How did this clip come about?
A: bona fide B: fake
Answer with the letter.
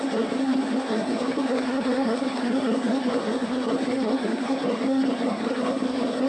B